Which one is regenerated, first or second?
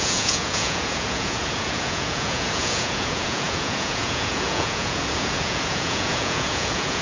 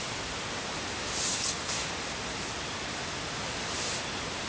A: first